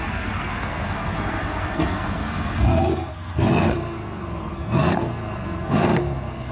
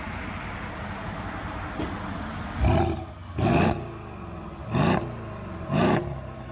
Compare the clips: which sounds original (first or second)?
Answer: second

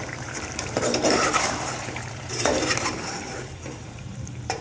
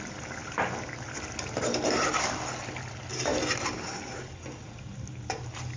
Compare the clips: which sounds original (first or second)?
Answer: second